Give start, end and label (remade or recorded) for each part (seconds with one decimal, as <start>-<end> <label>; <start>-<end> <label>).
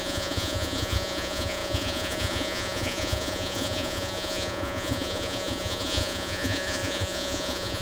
0.0-7.8 remade